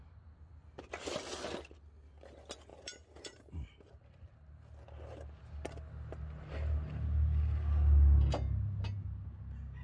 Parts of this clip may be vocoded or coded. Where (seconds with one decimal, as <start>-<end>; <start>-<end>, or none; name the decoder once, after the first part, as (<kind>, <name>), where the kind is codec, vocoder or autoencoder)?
2.7-4.3 (vocoder, BigVGAN v2)